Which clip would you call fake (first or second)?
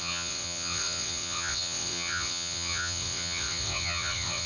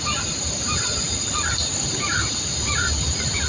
first